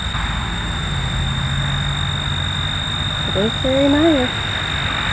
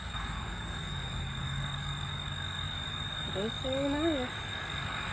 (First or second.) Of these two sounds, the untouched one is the first